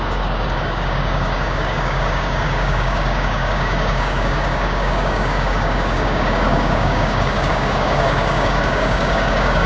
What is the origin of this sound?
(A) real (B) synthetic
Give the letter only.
B